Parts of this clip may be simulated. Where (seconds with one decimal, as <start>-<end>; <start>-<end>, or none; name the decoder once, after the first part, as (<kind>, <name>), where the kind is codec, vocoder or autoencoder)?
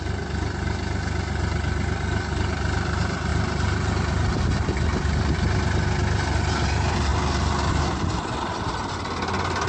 none